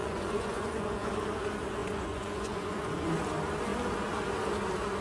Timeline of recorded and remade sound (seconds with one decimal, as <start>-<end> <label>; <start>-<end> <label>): 0.0-1.1 remade; 1.1-1.8 recorded; 1.8-3.2 remade; 3.2-5.0 recorded